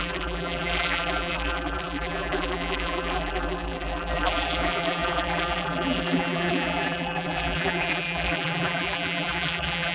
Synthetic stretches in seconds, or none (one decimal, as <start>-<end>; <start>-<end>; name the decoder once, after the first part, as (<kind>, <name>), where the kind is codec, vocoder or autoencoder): 0.0-9.9 (vocoder, BigVGAN v2)